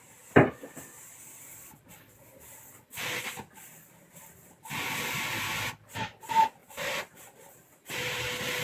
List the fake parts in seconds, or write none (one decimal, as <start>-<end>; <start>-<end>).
none